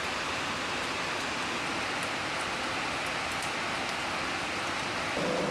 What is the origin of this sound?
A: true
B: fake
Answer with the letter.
A